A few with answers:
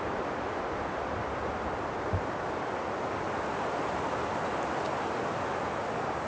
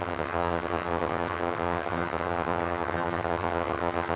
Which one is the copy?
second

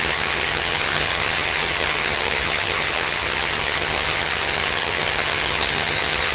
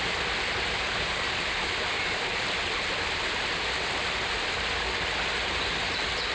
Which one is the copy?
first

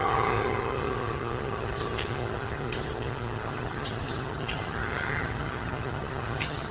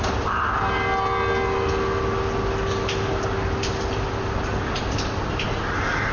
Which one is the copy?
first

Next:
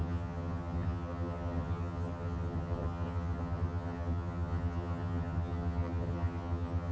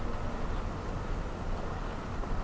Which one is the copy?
first